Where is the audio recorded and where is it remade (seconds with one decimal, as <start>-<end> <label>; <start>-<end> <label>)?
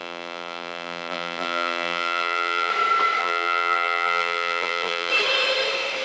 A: 0.0-2.7 remade; 2.7-3.2 recorded; 3.2-5.1 remade; 5.1-6.0 recorded